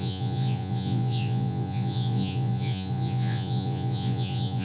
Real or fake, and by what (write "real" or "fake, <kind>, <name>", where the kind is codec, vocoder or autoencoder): fake, vocoder, Vocos